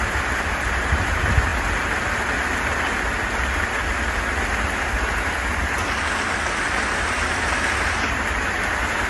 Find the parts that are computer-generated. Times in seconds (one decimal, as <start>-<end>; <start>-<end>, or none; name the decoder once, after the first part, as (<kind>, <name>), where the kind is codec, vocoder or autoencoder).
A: none